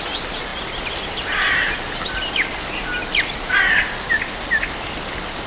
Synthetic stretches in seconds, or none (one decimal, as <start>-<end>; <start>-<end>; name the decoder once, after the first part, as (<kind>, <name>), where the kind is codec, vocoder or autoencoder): none